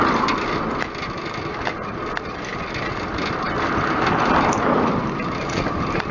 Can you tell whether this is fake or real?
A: real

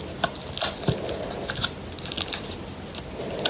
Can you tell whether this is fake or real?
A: real